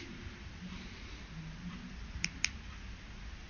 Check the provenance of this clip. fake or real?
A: real